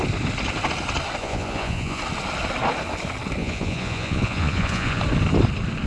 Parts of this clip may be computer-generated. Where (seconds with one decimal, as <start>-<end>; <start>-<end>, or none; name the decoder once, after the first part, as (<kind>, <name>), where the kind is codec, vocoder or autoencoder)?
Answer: 1.2-2.0 (vocoder, Vocos); 3.4-5.0

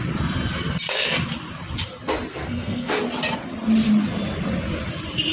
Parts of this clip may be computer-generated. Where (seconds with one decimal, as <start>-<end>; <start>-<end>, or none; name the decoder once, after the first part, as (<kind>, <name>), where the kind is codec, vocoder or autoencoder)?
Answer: 2.3-2.9 (codec, SNAC)